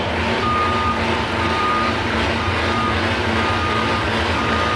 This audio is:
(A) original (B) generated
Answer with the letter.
A